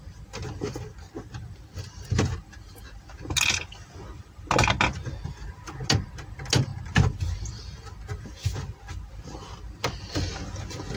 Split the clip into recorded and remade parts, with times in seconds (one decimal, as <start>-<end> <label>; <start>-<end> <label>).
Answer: 0.0-11.0 recorded